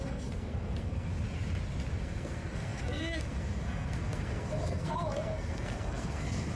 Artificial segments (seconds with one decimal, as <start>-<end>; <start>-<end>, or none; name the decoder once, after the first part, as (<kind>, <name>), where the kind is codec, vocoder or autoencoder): 0.0-1.1 (codec, SNAC); 2.0-6.6